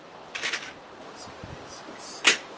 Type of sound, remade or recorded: recorded